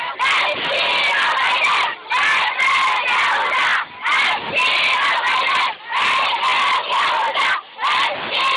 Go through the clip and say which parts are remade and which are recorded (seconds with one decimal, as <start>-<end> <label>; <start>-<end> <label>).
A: 0.0-8.6 recorded